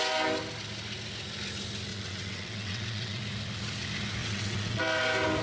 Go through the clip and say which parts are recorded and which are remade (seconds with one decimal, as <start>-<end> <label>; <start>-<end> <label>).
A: 0.0-1.9 recorded; 1.9-3.2 remade; 3.2-4.2 recorded; 4.2-4.8 remade; 4.8-5.4 recorded